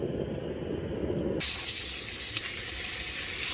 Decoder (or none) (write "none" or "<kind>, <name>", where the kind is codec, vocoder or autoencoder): none